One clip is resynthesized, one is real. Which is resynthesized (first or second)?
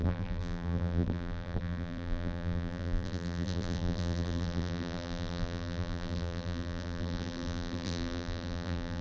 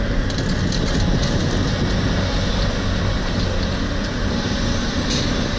first